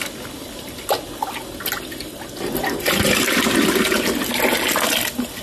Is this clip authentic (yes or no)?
yes